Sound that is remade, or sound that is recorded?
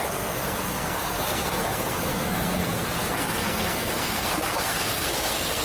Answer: remade